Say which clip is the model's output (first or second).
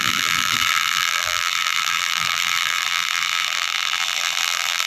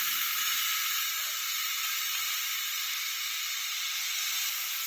first